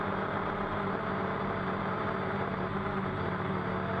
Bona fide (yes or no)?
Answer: no